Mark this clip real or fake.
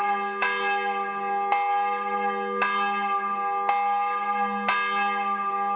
real